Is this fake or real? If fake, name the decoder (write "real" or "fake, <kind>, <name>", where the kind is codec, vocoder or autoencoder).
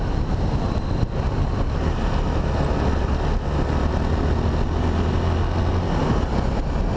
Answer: real